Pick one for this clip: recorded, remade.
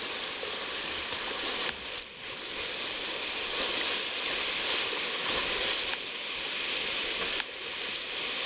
recorded